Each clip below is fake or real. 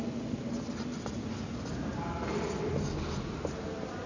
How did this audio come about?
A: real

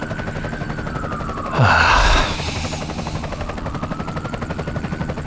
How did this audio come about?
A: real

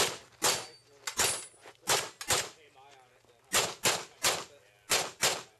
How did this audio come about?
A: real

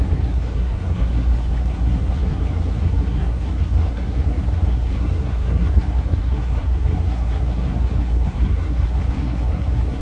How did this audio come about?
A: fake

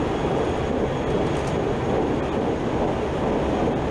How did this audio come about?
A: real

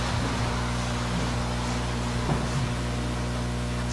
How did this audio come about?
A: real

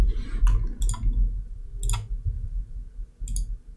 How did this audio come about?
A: real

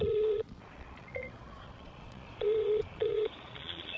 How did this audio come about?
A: fake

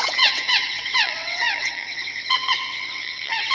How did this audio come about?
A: fake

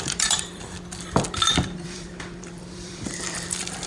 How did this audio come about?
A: fake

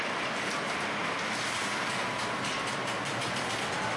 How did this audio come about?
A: real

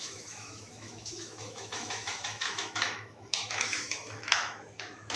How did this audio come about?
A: fake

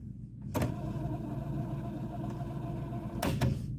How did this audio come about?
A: real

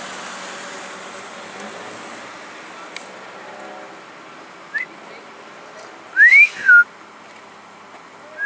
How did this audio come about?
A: real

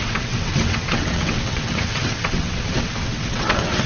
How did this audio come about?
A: fake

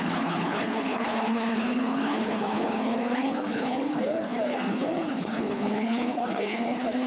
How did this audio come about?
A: fake